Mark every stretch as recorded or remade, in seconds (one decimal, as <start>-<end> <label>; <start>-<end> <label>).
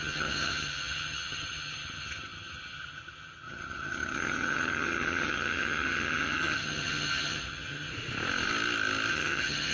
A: 0.0-7.9 remade; 7.9-9.1 recorded; 9.1-9.7 remade